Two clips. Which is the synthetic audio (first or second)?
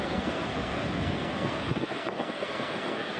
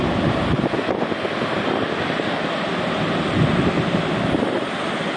first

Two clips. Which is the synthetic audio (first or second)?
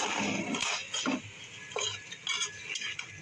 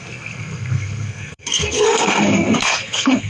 second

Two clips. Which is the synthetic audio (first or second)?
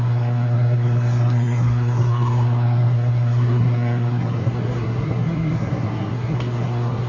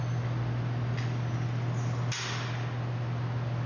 first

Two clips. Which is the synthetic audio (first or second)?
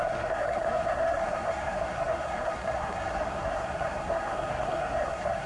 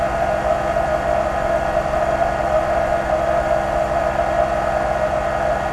first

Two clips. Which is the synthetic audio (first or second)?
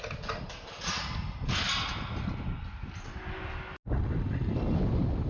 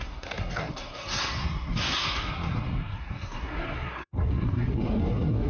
second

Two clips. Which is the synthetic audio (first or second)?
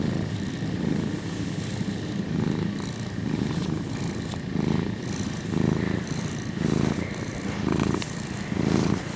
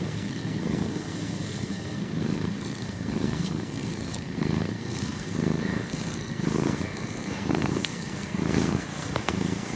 second